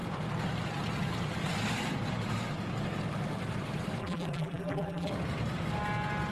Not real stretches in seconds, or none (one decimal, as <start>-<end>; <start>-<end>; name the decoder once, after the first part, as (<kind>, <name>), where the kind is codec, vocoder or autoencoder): 4.0-5.1 (vocoder, BigVGAN v2)